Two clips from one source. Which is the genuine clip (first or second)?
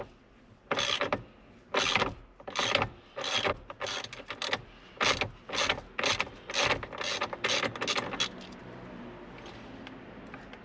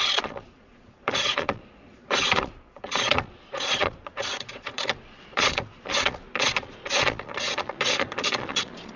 first